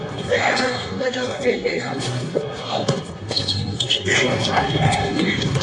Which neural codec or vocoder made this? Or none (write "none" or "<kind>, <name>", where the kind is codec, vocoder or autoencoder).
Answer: codec, SNAC